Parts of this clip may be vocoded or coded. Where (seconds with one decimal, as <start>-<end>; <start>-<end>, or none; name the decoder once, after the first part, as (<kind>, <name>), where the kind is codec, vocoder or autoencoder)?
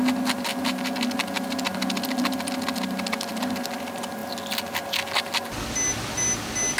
none